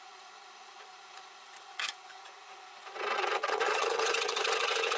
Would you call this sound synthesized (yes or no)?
yes